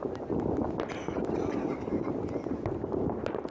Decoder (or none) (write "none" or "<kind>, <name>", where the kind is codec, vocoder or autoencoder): none